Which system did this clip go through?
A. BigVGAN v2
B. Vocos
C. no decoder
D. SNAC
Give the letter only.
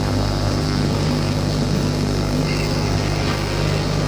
D